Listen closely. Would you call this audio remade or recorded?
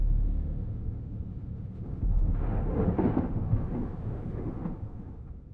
remade